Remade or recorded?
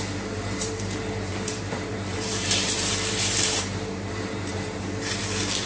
remade